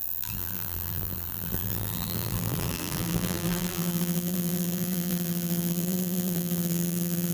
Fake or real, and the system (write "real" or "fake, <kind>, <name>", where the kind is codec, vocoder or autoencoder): fake, vocoder, BigVGAN v2